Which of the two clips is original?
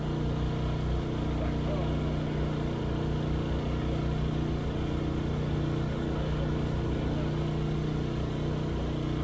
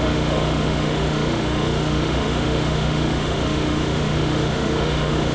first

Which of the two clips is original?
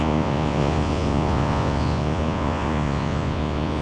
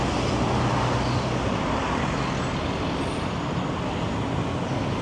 second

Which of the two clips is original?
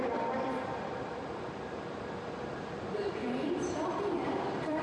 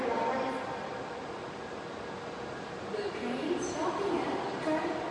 second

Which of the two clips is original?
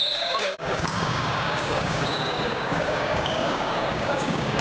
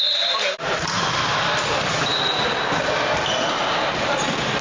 second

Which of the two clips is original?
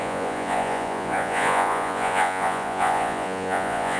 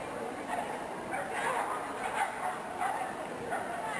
second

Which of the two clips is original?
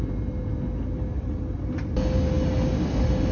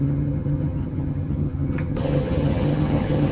first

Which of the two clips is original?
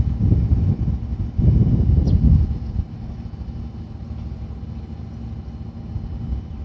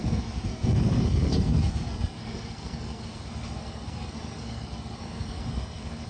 first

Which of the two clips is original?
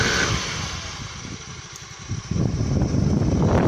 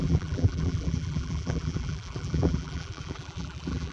first